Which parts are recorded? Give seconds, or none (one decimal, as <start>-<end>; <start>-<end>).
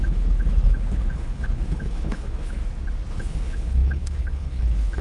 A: 2.6-3.1